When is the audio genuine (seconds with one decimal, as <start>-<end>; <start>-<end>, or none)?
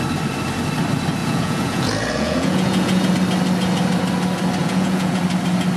0.0-1.2; 3.1-4.6; 5.2-5.8